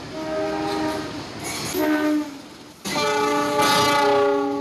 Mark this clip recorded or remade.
recorded